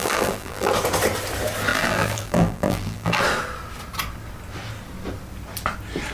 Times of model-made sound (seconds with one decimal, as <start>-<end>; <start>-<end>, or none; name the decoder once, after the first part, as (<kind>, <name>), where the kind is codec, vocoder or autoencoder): 0.0-0.7 (vocoder, BigVGAN v2); 1.7-3.2